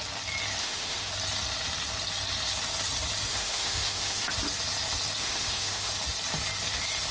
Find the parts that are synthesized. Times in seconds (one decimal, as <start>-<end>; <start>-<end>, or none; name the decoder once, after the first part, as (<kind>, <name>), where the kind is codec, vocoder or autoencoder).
0.6-1.1 (autoencoder, DAC-VAE); 3.3-4.3; 5.2-5.9